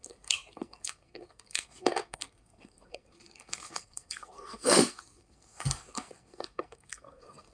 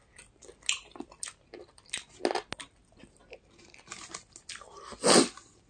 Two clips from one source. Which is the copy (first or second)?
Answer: first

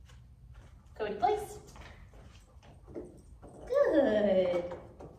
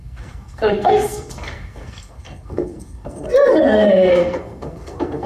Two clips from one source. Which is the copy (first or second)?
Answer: second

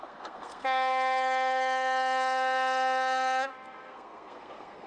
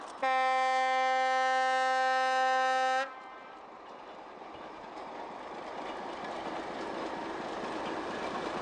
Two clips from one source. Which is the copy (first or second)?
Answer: first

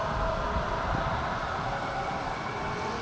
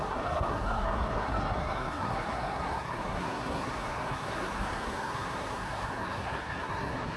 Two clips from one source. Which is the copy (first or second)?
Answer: second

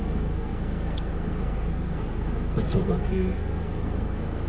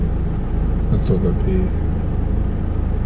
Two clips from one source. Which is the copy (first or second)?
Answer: first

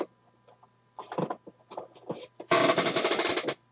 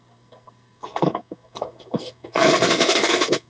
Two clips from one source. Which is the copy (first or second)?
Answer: second